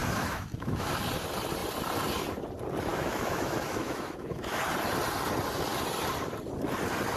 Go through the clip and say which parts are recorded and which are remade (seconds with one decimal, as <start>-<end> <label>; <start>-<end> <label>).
0.0-0.9 remade; 0.9-2.9 recorded; 2.9-4.6 remade; 4.6-7.2 recorded